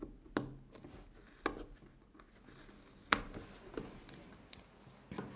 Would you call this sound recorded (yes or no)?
yes